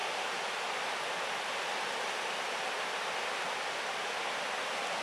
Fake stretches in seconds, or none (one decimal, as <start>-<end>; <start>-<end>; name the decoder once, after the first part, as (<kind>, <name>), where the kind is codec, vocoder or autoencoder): none